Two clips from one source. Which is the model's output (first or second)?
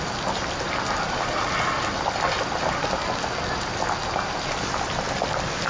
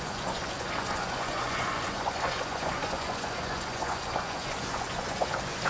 second